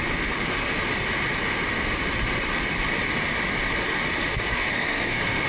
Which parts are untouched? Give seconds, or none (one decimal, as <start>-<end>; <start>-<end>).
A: 0.0-4.3